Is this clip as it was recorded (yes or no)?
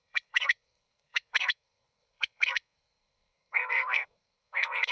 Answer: no